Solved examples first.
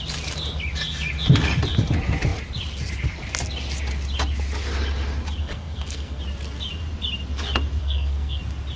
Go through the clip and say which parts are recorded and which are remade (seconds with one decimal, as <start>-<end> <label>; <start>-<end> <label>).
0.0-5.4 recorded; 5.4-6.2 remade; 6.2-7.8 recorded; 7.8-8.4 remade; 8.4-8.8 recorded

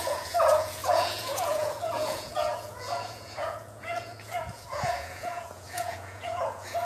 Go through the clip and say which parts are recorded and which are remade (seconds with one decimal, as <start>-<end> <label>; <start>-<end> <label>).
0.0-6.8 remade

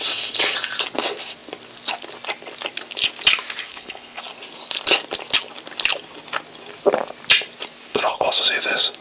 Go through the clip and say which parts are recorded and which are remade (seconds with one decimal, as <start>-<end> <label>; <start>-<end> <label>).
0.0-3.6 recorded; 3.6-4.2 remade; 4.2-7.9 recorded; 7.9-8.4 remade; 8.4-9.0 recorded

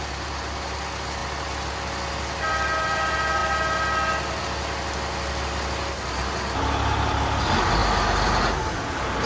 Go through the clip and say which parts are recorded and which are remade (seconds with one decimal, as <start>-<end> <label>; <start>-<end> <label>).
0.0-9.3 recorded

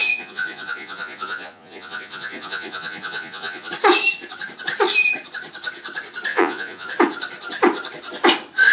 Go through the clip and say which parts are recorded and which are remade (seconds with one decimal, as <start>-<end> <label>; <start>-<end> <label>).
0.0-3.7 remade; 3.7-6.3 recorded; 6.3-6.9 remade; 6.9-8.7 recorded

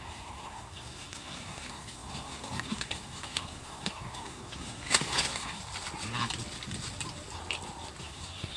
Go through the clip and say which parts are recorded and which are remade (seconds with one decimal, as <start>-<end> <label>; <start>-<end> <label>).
0.0-5.6 remade; 5.6-8.0 recorded; 8.0-8.6 remade

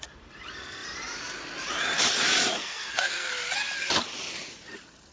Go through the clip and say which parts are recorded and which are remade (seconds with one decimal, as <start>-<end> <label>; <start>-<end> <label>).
0.0-2.6 recorded; 2.6-3.3 remade; 3.3-5.1 recorded